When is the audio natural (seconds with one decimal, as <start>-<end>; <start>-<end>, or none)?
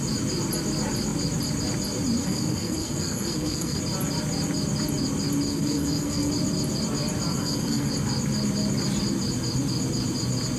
0.0-2.2; 3.8-5.5; 6.3-7.3; 7.9-10.6